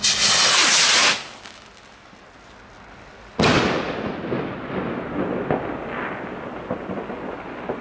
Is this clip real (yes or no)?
yes